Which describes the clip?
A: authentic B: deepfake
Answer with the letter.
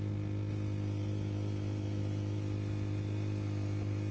A